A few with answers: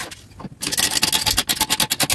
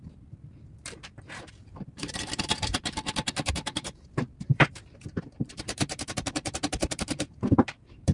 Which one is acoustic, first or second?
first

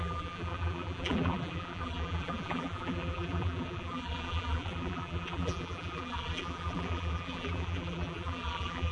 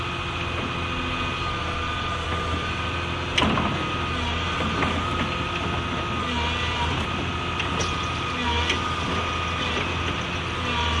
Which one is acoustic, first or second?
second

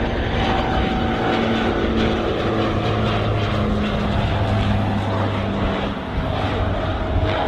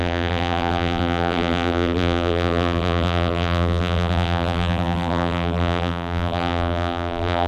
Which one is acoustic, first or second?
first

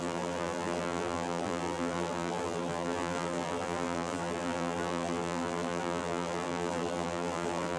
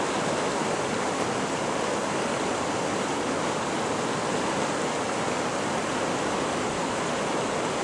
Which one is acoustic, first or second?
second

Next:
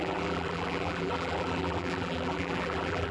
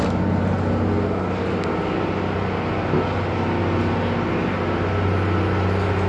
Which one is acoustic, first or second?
second